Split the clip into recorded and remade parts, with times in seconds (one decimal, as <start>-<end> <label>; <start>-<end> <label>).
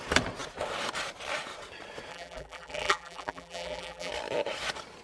0.0-2.1 recorded; 2.1-4.1 remade; 4.1-5.0 recorded